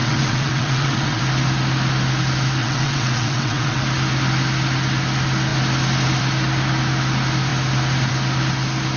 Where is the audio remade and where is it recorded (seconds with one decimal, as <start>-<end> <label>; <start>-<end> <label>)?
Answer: 0.0-1.2 remade; 1.2-2.6 recorded; 2.6-3.8 remade; 3.8-9.0 recorded